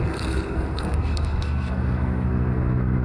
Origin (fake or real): fake